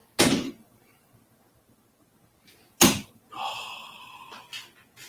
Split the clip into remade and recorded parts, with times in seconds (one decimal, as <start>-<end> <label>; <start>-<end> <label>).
0.0-5.1 recorded